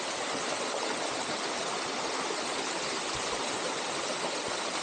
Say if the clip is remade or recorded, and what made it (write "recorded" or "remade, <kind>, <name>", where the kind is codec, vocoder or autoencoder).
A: recorded